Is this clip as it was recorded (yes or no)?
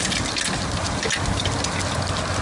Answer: yes